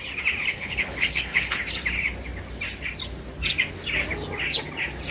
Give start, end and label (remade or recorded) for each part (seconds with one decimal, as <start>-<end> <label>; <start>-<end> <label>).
0.0-0.4 recorded; 0.4-1.6 remade; 1.6-5.1 recorded